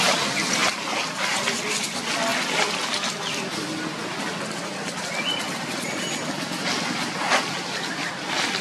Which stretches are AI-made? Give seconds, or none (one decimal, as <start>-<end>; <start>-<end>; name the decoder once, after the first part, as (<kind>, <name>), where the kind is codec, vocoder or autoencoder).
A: none